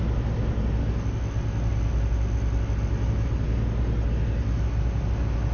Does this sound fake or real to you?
real